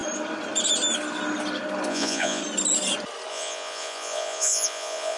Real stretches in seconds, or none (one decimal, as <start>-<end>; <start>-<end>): 0.0-1.9; 2.4-3.3